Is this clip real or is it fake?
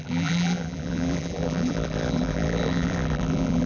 fake